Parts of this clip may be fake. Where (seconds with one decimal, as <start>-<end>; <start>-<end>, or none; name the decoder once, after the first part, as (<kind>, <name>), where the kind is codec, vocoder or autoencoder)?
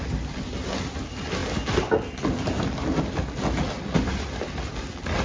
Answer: none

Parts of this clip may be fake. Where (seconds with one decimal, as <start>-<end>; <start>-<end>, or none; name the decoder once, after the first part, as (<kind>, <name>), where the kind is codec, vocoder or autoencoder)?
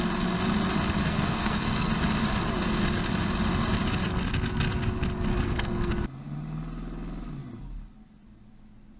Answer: 1.0-1.9 (codec, SNAC); 5.3-5.9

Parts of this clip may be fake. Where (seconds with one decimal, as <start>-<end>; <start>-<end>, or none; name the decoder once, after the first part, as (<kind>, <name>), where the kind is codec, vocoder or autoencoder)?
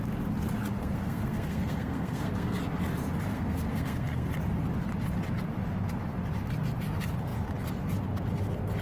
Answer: 0.8-2.6 (codec, SNAC); 3.3-4.3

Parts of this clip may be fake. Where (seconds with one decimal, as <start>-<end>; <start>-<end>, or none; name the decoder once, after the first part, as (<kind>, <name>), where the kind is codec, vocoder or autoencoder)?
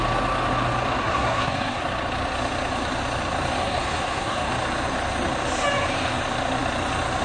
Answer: 1.0-1.8 (codec, SNAC); 3.6-4.5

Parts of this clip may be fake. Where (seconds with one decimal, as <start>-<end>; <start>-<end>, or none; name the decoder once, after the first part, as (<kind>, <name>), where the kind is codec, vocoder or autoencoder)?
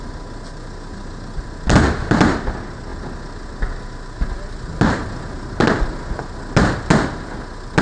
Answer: none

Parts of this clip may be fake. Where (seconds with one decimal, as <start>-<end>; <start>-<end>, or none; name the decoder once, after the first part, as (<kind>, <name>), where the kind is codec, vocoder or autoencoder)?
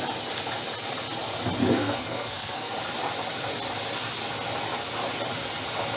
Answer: 1.6-2.7 (codec, SNAC)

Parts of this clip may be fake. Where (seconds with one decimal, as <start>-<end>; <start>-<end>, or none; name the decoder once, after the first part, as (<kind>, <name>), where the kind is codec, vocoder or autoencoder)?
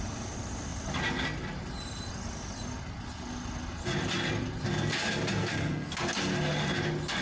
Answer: 5.4-6.0 (codec, SNAC)